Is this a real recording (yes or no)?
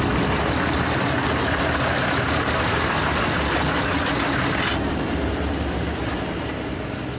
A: yes